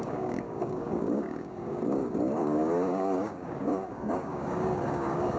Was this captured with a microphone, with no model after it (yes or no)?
no